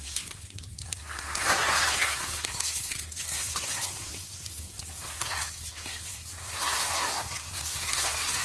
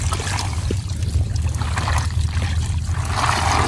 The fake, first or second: first